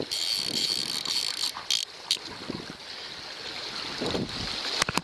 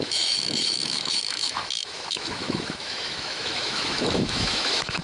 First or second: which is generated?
second